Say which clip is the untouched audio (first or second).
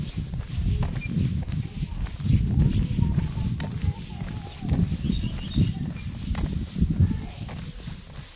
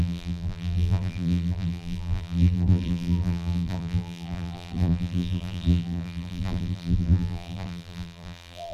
first